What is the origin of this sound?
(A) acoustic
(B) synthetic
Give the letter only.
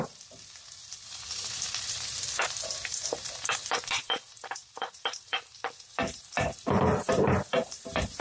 B